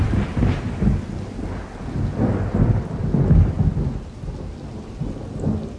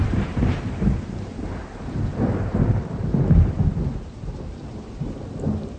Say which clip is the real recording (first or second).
first